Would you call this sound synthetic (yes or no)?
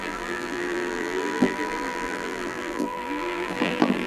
yes